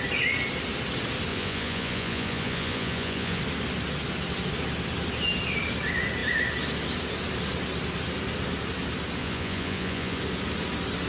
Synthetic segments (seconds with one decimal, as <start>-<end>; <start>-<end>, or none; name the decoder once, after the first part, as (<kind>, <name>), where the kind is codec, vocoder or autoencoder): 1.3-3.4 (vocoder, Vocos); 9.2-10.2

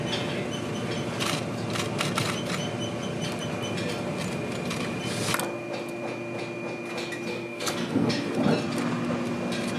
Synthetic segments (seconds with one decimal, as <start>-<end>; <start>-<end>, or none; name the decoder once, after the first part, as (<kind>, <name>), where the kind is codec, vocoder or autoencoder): 7.3-8.1 (codec, SNAC)

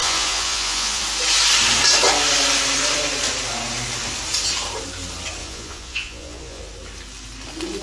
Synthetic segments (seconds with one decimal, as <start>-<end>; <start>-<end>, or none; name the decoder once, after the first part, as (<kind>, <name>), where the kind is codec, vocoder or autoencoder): 0.0-1.0 (vocoder, Vocos); 5.4-6.6

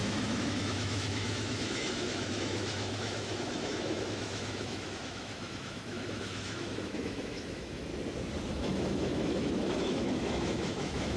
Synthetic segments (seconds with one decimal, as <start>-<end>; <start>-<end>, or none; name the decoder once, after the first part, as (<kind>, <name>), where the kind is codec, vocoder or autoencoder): 0.0-7.9 (autoencoder, DAC-VAE); 8.5-11.2